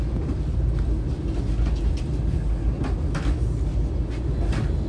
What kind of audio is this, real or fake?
real